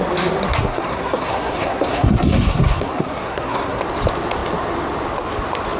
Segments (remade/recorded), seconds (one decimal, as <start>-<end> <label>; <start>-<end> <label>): 0.0-0.5 recorded; 0.5-3.8 remade; 3.8-5.8 recorded